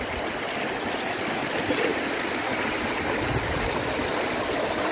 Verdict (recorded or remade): recorded